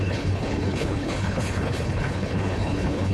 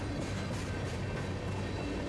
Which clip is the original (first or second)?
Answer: second